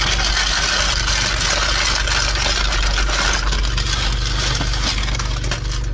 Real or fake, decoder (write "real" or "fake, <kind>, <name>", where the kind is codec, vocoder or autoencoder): real